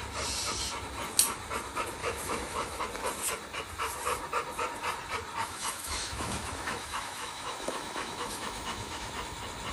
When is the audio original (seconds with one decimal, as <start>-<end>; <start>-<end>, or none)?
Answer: 0.0-2.0; 2.8-5.4; 9.1-9.7